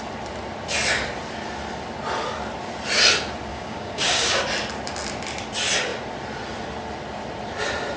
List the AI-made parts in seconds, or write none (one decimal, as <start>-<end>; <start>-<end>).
3.5-4.4